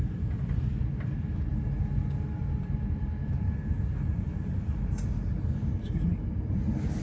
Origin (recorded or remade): recorded